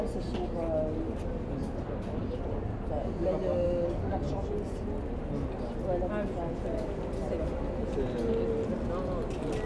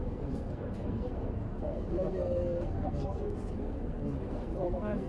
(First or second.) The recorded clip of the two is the first